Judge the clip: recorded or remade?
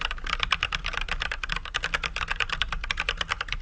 recorded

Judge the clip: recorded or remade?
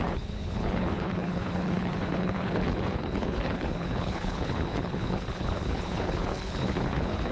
remade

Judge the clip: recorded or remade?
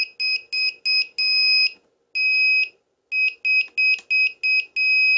recorded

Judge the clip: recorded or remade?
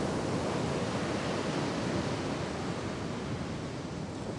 recorded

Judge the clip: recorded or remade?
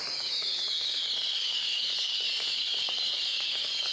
remade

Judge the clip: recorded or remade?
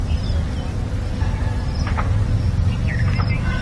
recorded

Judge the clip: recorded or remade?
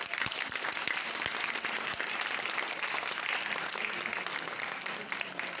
recorded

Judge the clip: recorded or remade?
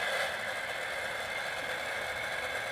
recorded